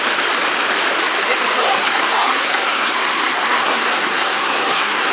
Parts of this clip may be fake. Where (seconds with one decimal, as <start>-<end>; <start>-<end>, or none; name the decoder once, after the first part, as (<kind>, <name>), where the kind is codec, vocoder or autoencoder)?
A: 1.6-5.1 (codec, SNAC)

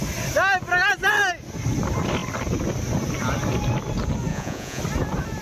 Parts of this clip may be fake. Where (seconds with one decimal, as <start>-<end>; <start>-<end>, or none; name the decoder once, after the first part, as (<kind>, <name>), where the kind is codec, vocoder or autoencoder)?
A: 4.3-4.8 (vocoder, Vocos)